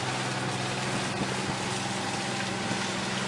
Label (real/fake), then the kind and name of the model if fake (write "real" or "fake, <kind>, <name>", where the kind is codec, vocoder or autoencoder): real